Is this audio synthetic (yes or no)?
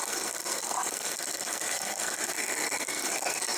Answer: yes